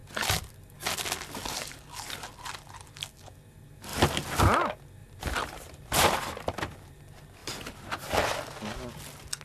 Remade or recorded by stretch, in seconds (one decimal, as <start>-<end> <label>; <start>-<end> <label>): 0.0-5.0 recorded; 5.0-7.0 remade; 7.0-7.4 recorded; 7.4-8.1 remade; 8.1-9.4 recorded